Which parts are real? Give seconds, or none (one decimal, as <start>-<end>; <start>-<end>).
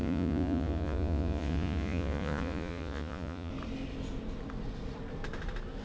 3.5-5.8